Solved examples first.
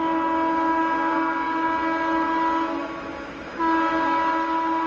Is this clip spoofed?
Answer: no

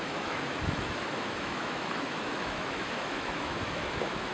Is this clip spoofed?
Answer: yes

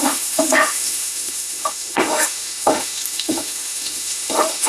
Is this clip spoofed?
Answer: yes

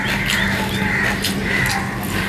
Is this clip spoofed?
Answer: no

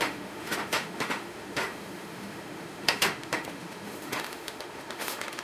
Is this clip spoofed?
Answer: yes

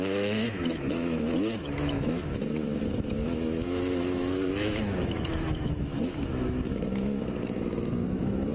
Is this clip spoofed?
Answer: yes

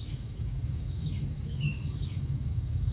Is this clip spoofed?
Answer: yes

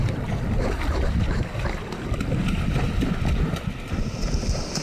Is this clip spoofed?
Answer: no